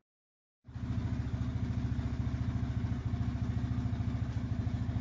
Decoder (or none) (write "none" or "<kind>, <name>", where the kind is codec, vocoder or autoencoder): none